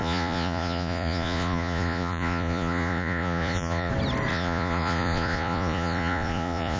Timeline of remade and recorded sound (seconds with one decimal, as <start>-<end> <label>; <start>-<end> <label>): 0.0-3.9 remade; 3.9-4.3 recorded; 4.3-6.8 remade